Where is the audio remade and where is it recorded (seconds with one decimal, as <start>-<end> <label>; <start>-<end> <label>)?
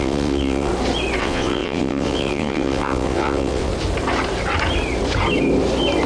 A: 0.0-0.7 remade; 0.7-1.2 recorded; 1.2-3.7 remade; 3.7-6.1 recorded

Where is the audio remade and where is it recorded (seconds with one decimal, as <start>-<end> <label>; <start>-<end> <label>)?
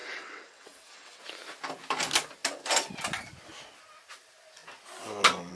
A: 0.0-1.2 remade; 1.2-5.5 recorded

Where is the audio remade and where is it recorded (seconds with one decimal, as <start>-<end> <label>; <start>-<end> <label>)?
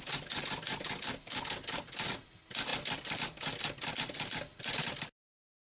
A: 0.0-5.7 recorded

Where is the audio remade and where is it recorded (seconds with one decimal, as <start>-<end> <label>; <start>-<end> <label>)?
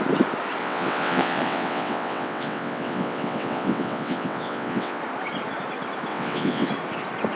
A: 0.0-0.6 recorded; 0.6-5.0 remade; 5.0-6.1 recorded; 6.1-6.7 remade; 6.7-7.4 recorded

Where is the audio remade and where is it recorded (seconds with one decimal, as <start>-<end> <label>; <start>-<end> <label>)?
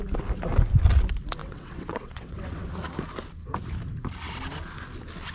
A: 0.0-1.4 recorded; 1.4-2.7 remade; 2.7-5.3 recorded